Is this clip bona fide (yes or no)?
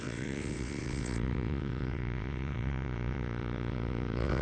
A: no